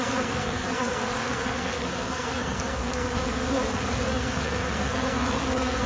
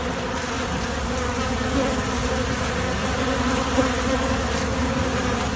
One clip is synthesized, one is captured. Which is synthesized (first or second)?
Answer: first